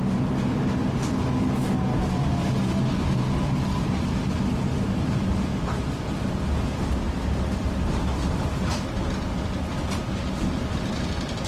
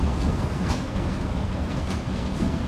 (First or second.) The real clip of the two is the first